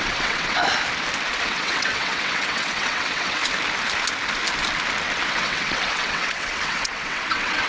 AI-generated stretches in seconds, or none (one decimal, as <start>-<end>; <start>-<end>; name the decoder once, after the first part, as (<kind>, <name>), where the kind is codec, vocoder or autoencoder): 0.0-0.6 (vocoder, WaveNeXt); 1.4-3.4; 5.3-7.7